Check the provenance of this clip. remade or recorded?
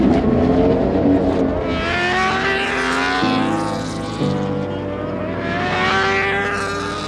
recorded